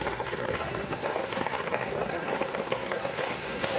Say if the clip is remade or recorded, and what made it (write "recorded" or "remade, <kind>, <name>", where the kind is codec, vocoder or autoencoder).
remade, codec, SNAC